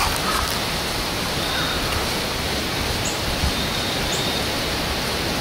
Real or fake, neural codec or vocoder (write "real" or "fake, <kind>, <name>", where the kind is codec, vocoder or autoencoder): real